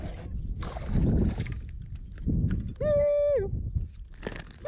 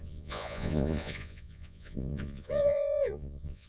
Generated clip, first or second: second